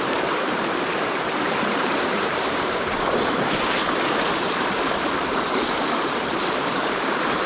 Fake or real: fake